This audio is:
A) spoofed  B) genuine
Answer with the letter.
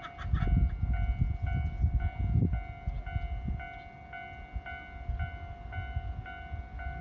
B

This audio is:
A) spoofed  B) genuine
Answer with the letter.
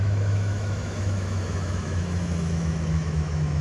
A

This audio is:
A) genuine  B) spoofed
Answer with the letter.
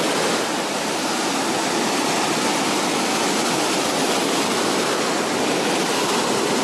A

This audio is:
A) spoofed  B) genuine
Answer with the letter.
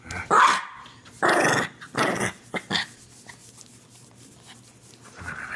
B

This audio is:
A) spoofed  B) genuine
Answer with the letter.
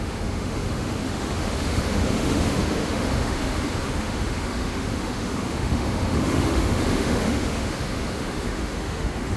A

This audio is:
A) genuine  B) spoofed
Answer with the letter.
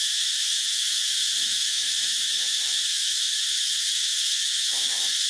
B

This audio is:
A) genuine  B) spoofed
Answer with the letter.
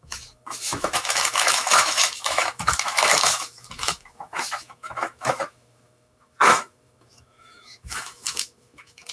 B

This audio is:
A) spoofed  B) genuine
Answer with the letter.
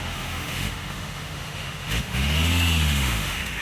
A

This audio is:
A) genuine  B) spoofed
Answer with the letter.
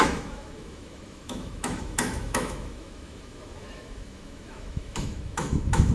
B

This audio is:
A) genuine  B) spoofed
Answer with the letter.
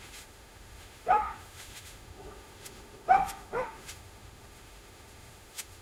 B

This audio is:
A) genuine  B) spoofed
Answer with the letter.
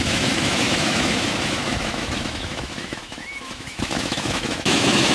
B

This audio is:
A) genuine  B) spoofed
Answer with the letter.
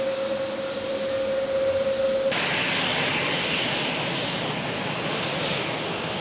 A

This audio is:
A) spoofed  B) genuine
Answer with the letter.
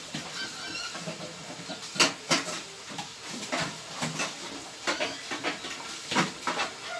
B